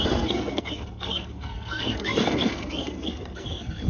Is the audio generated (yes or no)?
yes